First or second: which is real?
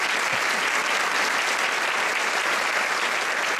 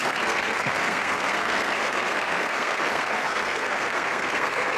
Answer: first